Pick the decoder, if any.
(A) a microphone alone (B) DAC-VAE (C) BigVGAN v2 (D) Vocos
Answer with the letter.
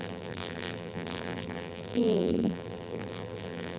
C